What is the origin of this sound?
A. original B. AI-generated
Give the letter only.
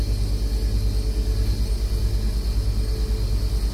A